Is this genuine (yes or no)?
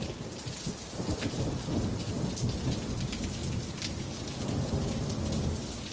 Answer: yes